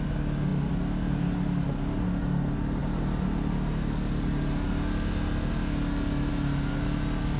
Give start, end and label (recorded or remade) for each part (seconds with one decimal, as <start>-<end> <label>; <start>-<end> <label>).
0.0-7.4 recorded